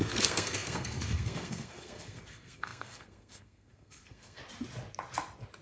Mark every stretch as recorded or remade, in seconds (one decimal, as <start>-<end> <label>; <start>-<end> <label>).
0.0-4.4 remade; 4.4-5.6 recorded